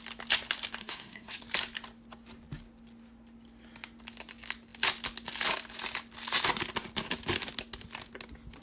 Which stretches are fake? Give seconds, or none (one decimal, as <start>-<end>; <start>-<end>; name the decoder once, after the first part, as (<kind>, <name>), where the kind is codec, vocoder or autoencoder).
0.8-1.4 (codec, SNAC)